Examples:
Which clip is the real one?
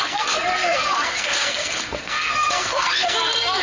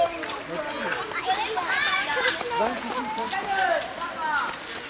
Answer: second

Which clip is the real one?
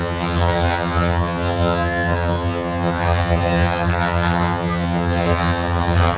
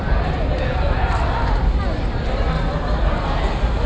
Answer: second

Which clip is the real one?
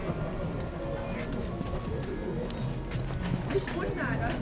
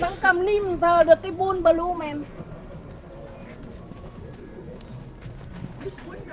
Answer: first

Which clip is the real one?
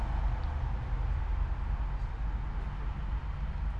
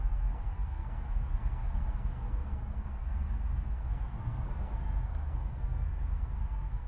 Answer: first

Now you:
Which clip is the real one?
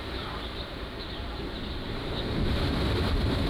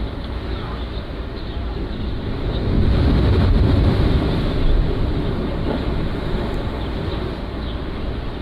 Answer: second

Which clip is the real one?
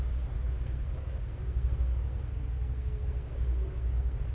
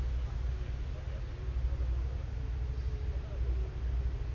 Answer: second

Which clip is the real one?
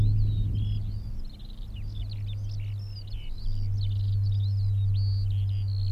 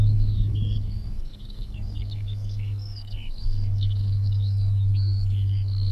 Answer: first